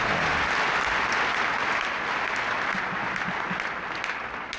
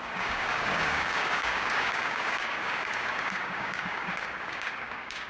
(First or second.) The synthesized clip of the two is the second